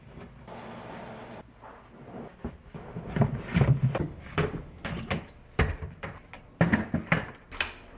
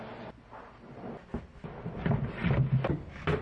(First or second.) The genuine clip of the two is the second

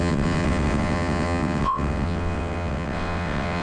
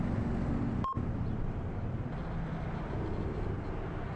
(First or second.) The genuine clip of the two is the second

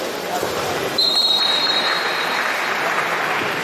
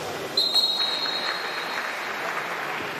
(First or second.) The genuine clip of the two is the second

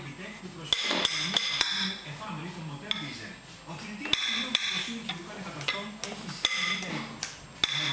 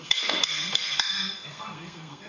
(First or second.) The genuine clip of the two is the first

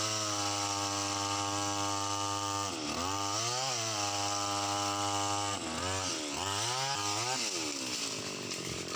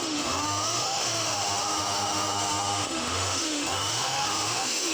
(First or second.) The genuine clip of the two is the first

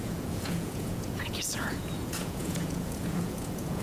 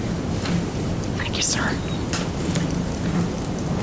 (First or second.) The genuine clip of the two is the second